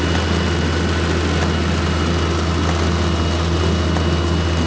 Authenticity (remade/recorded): recorded